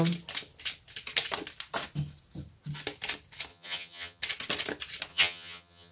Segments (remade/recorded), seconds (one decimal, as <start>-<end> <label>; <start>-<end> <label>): 0.0-3.5 recorded; 3.5-4.2 remade; 4.2-5.1 recorded; 5.1-5.9 remade